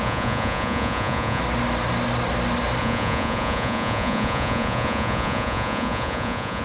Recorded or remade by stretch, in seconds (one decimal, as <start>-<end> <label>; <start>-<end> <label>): 0.0-1.4 remade; 1.4-2.8 recorded; 2.8-6.6 remade